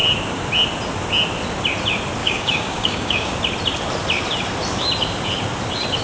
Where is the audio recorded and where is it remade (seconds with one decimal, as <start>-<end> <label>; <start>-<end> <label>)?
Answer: 0.0-2.2 recorded; 2.2-3.4 remade; 3.4-6.0 recorded